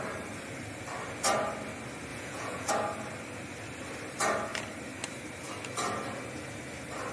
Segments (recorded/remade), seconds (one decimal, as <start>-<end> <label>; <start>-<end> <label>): 0.0-2.1 recorded; 2.1-2.7 remade; 2.7-7.1 recorded

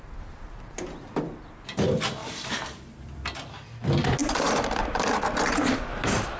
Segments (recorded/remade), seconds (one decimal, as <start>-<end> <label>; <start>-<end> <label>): 0.0-2.2 recorded; 2.2-3.4 remade; 3.4-4.2 recorded; 4.2-5.2 remade; 5.2-6.4 recorded

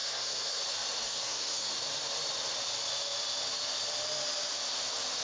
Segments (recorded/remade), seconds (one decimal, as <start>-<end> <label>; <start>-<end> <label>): 0.0-0.6 remade; 0.6-1.0 recorded; 1.0-1.7 remade; 1.7-5.2 recorded

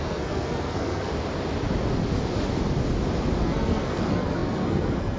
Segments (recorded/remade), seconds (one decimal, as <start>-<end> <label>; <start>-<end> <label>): 0.0-1.1 remade; 1.1-3.4 recorded; 3.4-5.2 remade

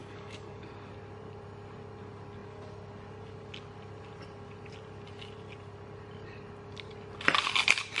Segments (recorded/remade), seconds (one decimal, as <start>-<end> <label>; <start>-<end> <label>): 0.0-0.6 remade; 0.6-8.0 recorded

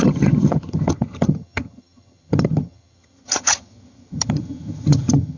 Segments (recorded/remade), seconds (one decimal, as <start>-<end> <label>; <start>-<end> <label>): 0.0-5.4 remade